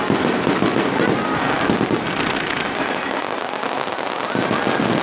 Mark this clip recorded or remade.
recorded